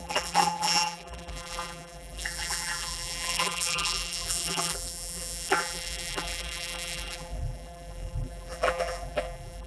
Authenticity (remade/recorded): remade